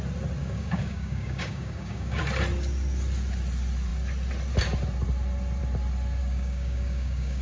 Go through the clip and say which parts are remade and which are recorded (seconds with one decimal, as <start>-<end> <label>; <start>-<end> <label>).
0.0-0.4 recorded; 0.4-2.2 remade; 2.2-6.2 recorded; 6.2-7.4 remade